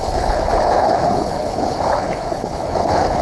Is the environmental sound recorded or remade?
remade